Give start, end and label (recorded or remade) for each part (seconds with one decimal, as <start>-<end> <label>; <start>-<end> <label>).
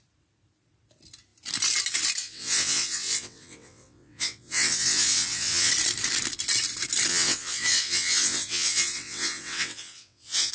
0.0-2.2 recorded; 2.2-5.7 remade; 5.7-7.1 recorded; 7.1-10.5 remade